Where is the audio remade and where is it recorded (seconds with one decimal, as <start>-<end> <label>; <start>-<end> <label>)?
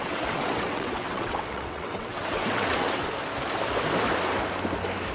0.0-3.1 remade; 3.1-5.1 recorded